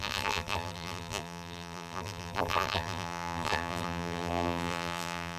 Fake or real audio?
fake